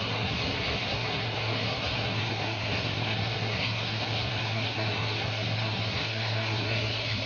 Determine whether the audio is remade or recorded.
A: remade